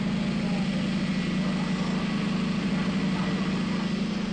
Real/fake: real